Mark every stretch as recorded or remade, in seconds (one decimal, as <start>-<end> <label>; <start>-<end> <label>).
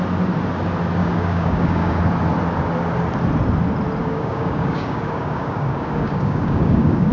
0.0-1.0 recorded; 1.0-2.0 remade; 2.0-4.0 recorded; 4.0-7.1 remade